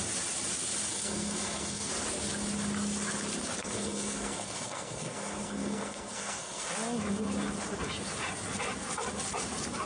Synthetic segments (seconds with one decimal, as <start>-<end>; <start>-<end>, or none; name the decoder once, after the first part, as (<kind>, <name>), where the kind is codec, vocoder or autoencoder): 0.9-1.9 (codec, SNAC); 3.6-6.7